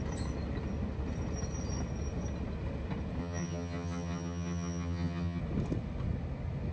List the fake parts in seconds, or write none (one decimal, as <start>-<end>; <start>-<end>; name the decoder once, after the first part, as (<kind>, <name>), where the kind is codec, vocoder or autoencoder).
3.2-5.4 (vocoder, HiFi-GAN)